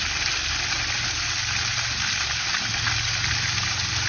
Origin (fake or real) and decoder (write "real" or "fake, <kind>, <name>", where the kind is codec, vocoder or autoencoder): real